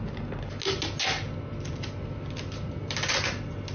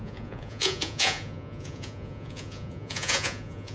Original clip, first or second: first